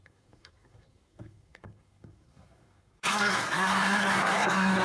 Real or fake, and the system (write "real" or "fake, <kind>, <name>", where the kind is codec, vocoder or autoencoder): fake, codec, SNAC